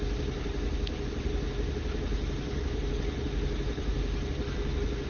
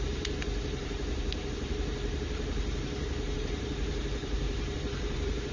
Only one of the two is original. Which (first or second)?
first